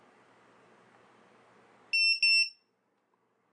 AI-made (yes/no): no